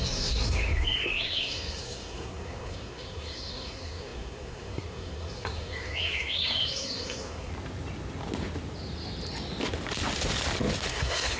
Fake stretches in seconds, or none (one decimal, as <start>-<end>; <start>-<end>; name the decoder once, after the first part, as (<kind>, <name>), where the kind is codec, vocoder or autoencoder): 0.0-7.5 (codec, SNAC); 10.9-11.4